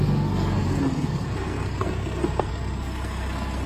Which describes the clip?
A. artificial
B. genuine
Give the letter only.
A